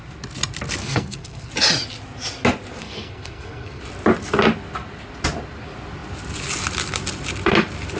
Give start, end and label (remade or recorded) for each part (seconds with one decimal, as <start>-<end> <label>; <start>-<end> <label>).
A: 0.0-0.8 recorded; 0.8-1.5 remade; 1.5-2.8 recorded; 2.8-3.8 remade; 3.8-8.0 recorded